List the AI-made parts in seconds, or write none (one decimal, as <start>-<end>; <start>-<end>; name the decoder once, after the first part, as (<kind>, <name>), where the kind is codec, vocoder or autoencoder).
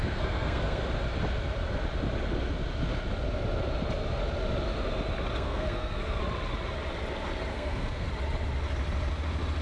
0.0-0.8 (codec, SNAC); 5.3-6.2; 7.5-8.1